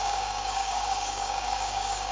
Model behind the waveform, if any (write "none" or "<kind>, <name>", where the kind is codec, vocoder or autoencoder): codec, DAC